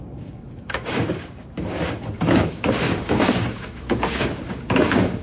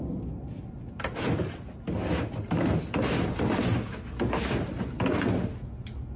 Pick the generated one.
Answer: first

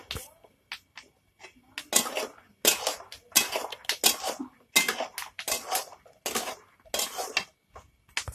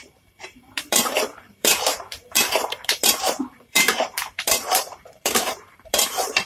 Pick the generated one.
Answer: second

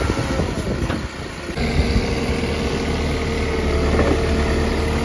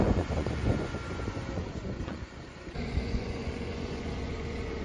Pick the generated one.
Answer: second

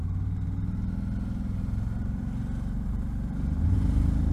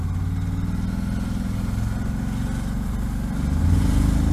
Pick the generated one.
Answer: first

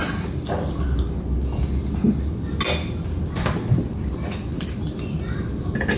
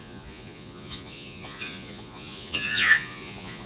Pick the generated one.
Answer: second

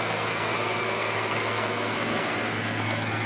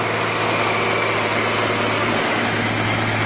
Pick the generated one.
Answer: first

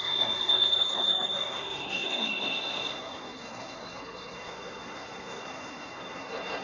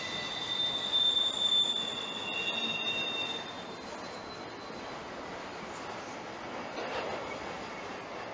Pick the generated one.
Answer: first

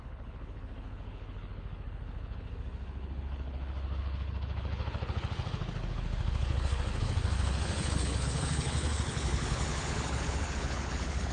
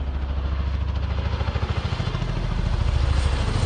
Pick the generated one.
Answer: first